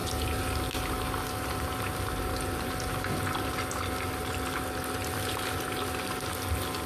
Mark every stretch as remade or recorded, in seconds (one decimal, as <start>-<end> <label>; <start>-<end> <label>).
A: 0.0-6.9 recorded